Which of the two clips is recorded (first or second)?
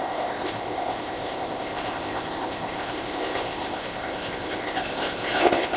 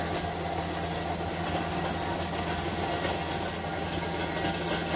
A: second